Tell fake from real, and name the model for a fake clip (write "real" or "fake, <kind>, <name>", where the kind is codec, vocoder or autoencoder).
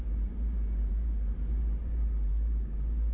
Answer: real